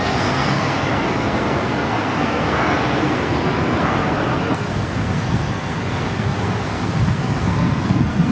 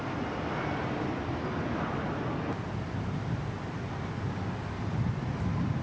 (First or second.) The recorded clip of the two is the second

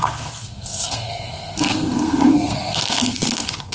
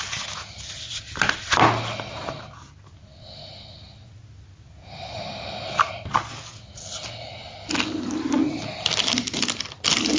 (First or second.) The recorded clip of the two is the second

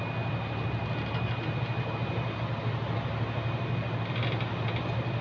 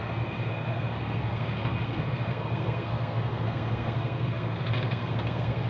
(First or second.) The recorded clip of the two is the first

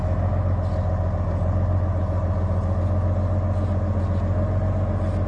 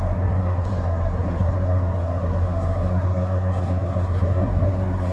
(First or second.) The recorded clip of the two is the first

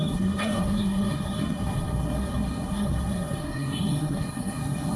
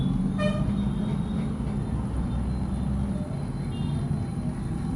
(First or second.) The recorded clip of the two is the second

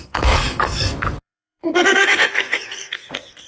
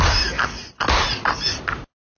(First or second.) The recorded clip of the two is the second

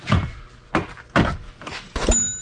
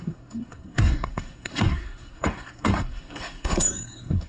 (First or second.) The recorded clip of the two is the first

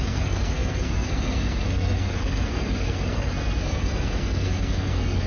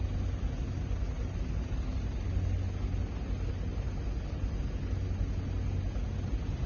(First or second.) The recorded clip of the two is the second